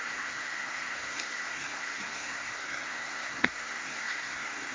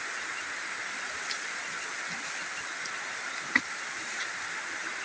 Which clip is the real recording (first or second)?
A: second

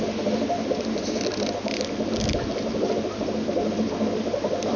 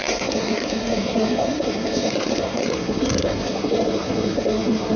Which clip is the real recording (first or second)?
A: first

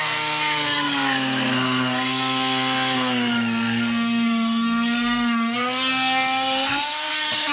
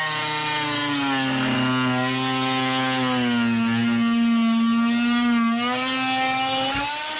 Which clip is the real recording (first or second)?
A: second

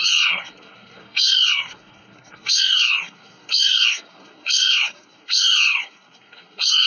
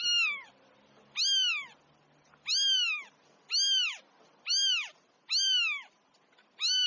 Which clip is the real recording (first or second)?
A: second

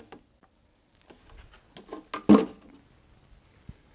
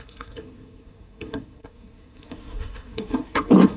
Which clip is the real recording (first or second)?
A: first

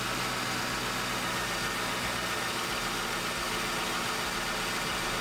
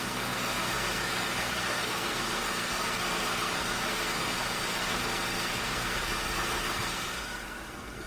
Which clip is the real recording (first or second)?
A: first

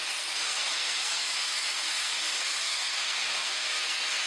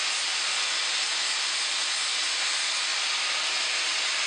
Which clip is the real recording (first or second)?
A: second